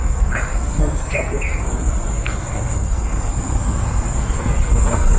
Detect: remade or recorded remade